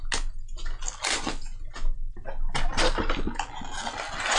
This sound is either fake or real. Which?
real